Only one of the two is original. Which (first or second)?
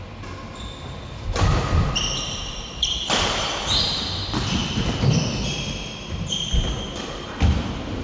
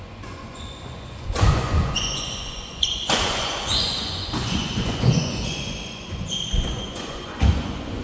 first